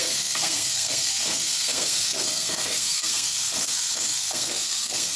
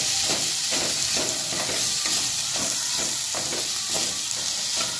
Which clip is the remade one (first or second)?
first